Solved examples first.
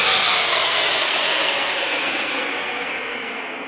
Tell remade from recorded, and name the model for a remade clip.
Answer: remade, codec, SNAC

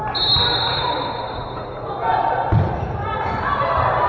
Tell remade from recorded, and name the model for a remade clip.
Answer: recorded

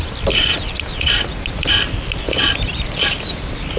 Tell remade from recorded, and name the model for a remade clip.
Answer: remade, vocoder, BigVGAN v2